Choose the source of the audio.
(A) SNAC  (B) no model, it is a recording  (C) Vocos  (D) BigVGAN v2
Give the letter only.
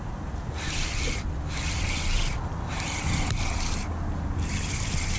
B